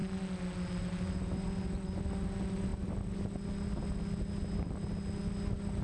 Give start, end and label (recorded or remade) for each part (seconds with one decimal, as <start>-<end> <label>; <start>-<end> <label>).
0.0-5.8 recorded